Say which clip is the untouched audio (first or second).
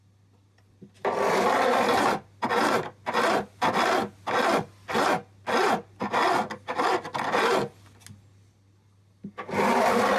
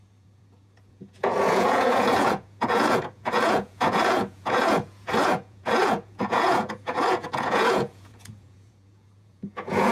first